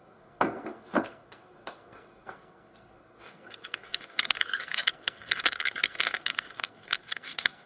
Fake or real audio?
fake